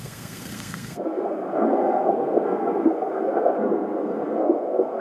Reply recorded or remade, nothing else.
remade